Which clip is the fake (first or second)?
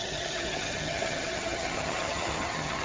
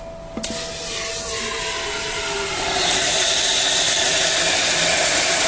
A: first